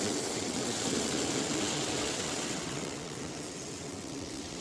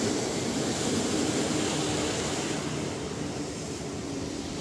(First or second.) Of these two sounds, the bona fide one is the second